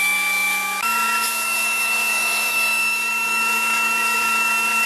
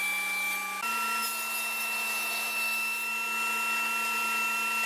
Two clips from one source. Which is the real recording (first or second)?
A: second